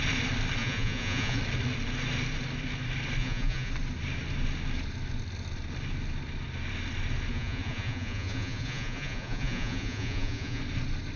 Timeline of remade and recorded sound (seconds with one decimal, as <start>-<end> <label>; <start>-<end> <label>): 0.0-0.6 recorded; 0.6-1.4 remade; 1.4-3.2 recorded; 3.2-3.7 remade; 3.7-7.3 recorded; 7.3-10.6 remade; 10.6-11.2 recorded